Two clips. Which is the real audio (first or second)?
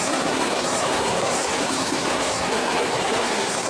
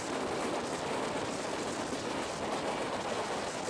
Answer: second